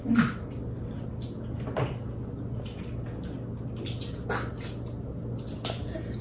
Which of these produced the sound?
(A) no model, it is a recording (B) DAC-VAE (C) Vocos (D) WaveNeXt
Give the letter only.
A